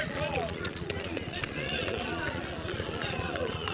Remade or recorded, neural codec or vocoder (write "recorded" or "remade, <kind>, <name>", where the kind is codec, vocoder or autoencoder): remade, vocoder, Vocos